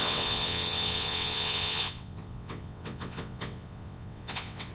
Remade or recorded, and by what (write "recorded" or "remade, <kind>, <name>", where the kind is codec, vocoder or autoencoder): remade, vocoder, WaveNeXt